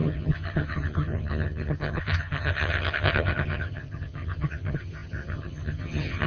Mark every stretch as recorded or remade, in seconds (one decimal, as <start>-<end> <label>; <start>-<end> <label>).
0.0-6.3 remade